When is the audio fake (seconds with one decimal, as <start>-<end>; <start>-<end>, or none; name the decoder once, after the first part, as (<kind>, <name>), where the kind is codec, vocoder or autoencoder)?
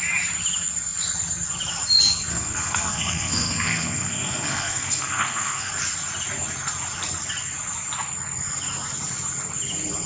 2.3-5.7 (codec, SNAC)